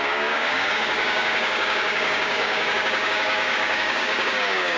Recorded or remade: remade